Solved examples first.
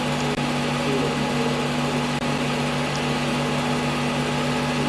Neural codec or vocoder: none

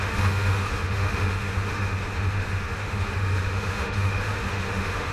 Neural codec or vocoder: autoencoder, DAC-VAE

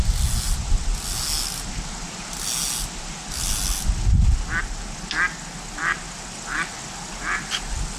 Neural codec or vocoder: none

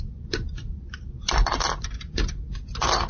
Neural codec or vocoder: none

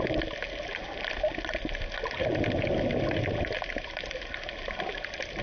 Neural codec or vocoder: none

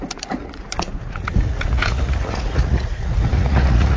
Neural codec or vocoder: vocoder, Vocos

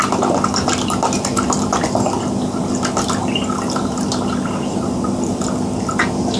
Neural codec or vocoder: none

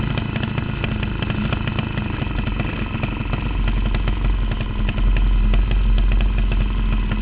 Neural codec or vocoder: none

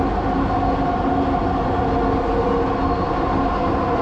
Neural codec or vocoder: none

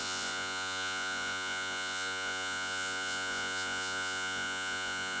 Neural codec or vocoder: vocoder, Vocos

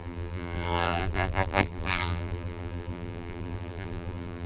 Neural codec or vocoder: vocoder, BigVGAN v2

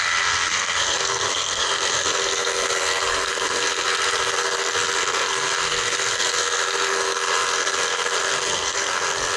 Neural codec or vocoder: codec, SNAC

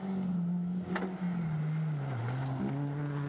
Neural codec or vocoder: none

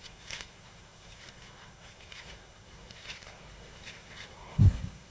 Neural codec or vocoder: codec, SNAC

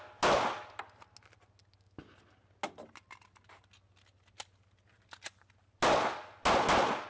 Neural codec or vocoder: none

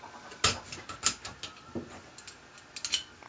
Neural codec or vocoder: none